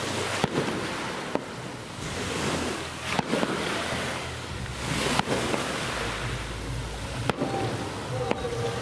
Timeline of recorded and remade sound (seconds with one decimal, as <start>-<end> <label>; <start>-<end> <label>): 0.0-1.7 recorded; 1.7-5.8 remade; 5.8-8.8 recorded